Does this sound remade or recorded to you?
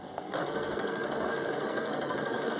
remade